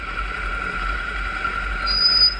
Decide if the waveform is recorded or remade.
remade